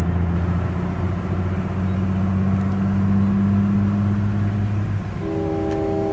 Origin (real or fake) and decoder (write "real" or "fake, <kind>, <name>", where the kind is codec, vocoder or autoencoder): real